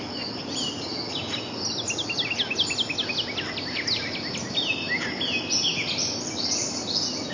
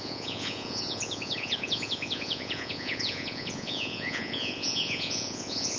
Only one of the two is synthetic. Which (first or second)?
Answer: second